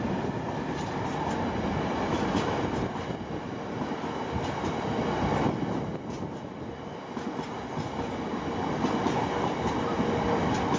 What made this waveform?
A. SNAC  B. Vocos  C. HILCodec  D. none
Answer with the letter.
D